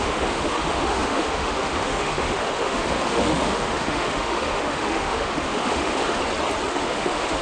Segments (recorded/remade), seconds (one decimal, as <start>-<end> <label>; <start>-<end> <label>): 0.0-6.2 remade; 6.2-6.7 recorded; 6.7-7.4 remade